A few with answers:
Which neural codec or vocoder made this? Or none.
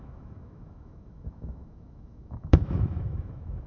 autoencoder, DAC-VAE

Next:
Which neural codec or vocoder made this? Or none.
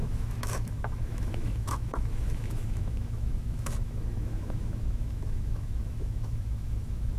autoencoder, DAC-VAE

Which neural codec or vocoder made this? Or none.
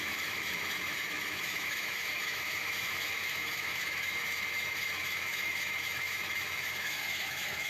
autoencoder, DAC-VAE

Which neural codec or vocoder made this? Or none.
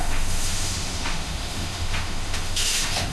autoencoder, DAC-VAE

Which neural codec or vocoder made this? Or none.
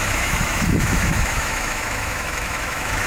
autoencoder, DAC-VAE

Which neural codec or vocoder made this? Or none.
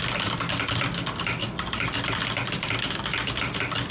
none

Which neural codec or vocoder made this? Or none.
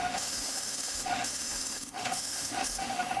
autoencoder, DAC-VAE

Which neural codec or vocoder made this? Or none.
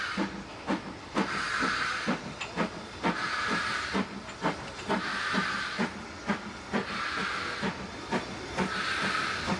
none